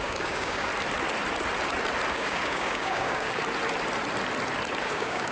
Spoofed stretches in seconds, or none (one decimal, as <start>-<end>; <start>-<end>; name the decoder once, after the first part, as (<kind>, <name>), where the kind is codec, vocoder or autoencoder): 0.0-0.7 (codec, DAC); 2.1-3.4; 4.8-5.3